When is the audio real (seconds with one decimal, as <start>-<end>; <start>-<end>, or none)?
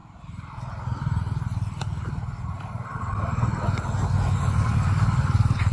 0.0-5.7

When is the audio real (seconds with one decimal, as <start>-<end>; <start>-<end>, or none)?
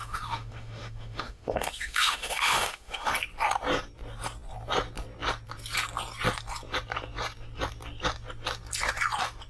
3.1-9.5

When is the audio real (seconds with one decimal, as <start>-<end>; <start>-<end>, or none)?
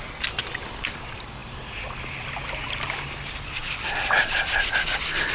0.0-5.3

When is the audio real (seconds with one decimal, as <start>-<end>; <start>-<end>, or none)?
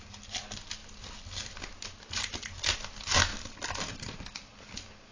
0.0-5.1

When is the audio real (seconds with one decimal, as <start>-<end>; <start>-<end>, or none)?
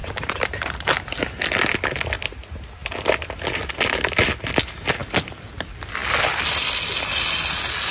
1.1-7.9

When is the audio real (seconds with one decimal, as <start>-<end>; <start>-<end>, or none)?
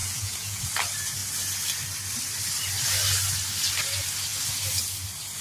0.6-5.4